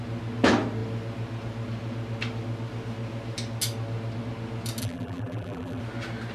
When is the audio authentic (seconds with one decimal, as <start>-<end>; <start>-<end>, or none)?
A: 0.0-4.8; 5.8-6.3